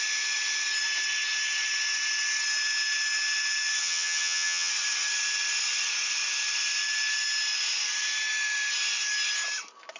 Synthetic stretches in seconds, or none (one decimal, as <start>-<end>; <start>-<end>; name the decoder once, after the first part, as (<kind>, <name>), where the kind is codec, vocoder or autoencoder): 3.8-4.7 (vocoder, HiFi-GAN)